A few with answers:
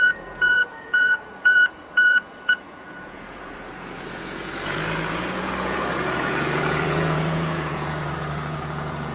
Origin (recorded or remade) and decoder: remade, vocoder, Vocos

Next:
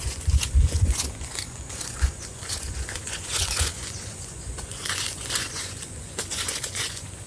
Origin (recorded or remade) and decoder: remade, vocoder, Vocos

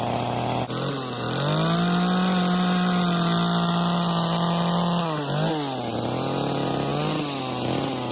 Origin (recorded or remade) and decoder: recorded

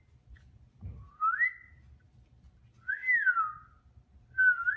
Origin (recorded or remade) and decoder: recorded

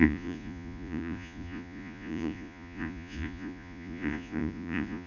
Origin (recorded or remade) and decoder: remade, vocoder, Vocos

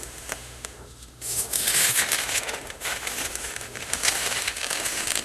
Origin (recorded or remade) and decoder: remade, autoencoder, DAC-VAE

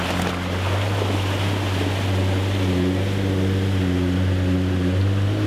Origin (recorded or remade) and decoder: recorded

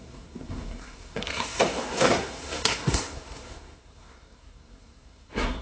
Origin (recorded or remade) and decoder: remade, codec, SNAC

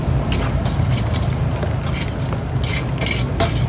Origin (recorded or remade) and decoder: recorded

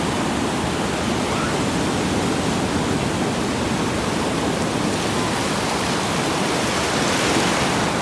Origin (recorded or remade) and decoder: recorded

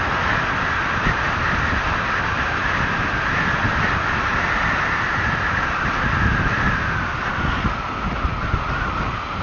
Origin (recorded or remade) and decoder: recorded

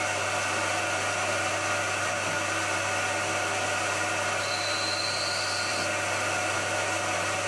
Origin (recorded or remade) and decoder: recorded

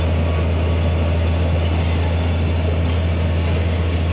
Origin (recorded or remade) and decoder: recorded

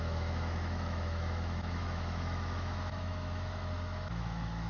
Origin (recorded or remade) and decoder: remade, autoencoder, DAC-VAE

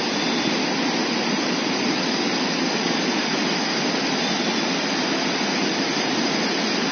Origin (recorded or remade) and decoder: recorded